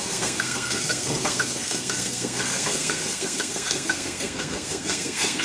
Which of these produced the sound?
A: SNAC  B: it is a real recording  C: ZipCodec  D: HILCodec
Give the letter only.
A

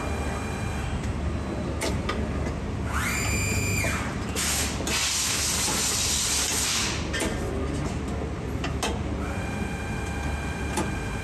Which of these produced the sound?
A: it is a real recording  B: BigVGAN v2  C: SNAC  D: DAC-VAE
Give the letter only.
A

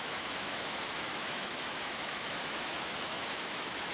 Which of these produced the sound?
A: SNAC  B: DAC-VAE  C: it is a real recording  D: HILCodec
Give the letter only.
B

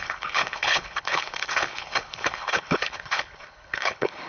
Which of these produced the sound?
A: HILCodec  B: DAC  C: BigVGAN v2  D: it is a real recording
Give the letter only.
A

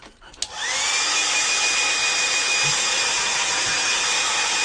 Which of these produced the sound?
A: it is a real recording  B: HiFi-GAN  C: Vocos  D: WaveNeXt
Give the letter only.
A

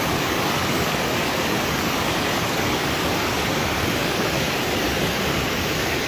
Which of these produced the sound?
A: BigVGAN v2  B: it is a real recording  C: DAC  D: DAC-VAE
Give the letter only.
C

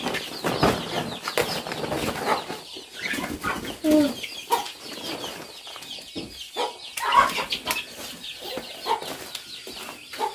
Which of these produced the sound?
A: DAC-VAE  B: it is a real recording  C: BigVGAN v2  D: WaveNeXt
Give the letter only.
B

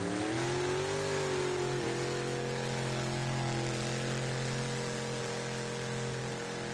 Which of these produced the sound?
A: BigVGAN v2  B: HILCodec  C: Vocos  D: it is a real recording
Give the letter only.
D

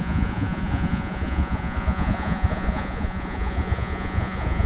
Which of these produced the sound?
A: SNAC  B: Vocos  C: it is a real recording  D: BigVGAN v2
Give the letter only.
B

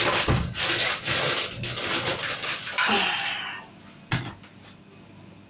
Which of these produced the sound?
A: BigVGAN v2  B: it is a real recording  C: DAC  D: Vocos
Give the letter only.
B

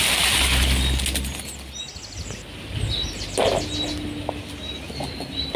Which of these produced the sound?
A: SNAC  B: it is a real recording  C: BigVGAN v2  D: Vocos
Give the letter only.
B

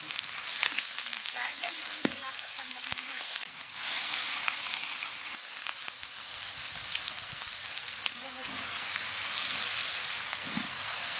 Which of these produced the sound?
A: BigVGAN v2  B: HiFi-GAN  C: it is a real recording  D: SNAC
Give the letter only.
D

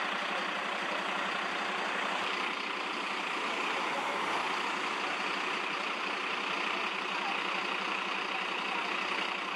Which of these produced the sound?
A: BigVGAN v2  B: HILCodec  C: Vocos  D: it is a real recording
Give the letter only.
A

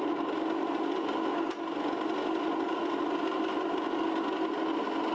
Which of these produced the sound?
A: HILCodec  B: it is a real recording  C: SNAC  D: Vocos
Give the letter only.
B